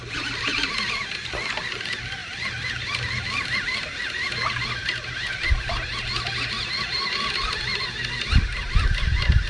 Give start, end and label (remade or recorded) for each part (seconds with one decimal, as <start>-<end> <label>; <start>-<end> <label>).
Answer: 0.0-9.5 recorded